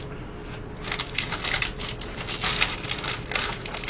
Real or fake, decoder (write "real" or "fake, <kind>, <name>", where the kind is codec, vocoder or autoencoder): real